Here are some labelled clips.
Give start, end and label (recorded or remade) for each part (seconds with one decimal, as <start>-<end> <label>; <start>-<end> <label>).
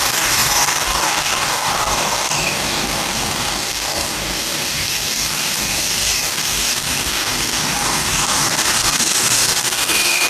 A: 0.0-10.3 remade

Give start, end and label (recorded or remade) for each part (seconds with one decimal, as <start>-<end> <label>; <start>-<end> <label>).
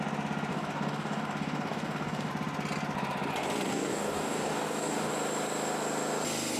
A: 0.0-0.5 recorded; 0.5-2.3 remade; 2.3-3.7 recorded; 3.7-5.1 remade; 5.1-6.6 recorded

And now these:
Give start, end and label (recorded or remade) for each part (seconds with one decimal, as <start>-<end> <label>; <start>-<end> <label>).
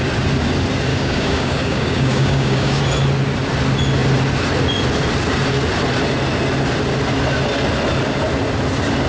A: 0.0-0.9 recorded; 0.9-2.8 remade; 2.8-9.1 recorded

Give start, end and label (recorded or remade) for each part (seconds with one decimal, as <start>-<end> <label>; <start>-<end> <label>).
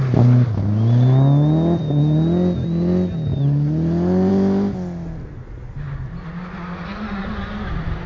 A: 0.0-8.1 recorded